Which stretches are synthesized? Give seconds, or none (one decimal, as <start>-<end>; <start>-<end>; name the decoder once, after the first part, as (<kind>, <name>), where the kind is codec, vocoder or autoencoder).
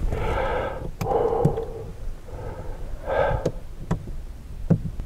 none